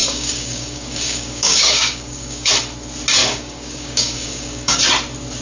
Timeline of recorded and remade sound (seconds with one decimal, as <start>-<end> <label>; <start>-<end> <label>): 0.0-2.5 remade; 2.5-3.2 recorded; 3.2-4.8 remade; 4.8-5.4 recorded